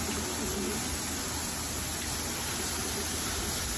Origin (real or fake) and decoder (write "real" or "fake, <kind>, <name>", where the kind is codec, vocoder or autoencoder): real